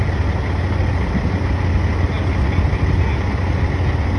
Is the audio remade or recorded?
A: recorded